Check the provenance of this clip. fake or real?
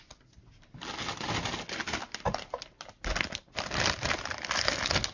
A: real